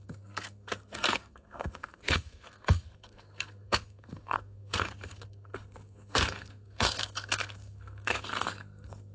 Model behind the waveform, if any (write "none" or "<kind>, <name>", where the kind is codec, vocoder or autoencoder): codec, SNAC